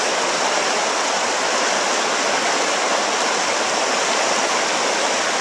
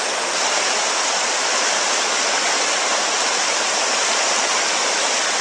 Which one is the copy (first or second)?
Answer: second